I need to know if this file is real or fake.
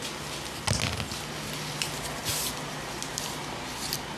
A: real